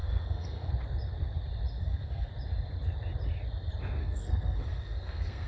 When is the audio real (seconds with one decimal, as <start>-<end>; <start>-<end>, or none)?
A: 0.7-1.8; 2.3-4.0